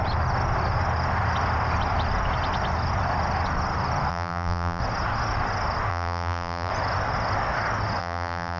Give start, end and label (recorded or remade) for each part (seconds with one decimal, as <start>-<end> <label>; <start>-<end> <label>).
0.0-4.1 recorded; 4.1-4.8 remade; 4.8-5.9 recorded; 5.9-6.7 remade; 6.7-8.0 recorded; 8.0-8.6 remade